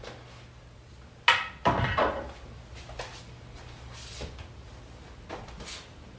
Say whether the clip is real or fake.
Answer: real